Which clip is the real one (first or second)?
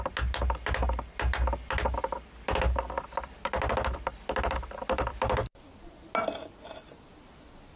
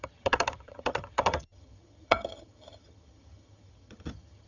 first